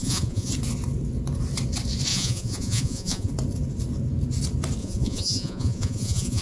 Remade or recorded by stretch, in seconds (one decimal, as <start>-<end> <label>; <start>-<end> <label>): 0.0-0.5 remade; 0.5-2.1 recorded; 2.1-3.3 remade; 3.3-4.8 recorded; 4.8-6.4 remade